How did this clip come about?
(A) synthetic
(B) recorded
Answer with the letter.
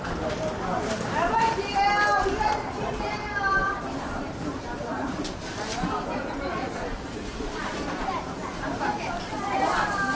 A